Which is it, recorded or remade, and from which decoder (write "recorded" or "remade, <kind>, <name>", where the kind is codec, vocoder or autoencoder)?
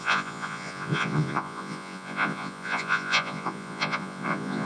remade, vocoder, Vocos